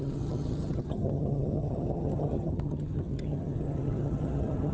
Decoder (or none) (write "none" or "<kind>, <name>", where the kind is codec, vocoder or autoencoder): vocoder, HiFi-GAN